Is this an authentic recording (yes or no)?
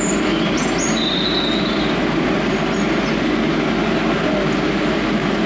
yes